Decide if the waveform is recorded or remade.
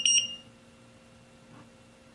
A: recorded